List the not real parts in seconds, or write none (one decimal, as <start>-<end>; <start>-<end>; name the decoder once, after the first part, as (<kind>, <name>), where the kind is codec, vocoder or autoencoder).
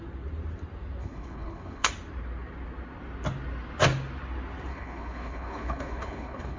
1.0-1.9 (codec, HILCodec); 4.7-6.6